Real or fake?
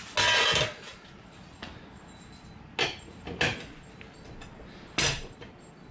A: real